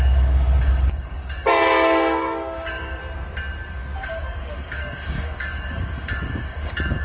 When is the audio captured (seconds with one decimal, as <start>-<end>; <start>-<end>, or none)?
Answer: 3.0-4.0